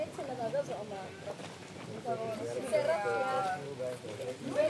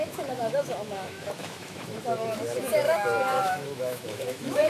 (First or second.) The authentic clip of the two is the first